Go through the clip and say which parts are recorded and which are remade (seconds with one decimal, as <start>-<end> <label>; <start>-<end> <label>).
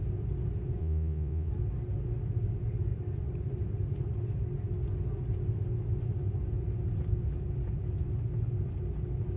0.0-0.8 recorded; 0.8-1.5 remade; 1.5-9.4 recorded